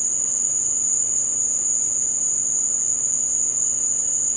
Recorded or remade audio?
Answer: recorded